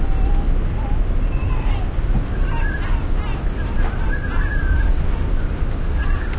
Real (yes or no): yes